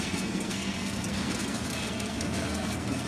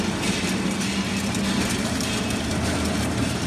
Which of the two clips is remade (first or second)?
first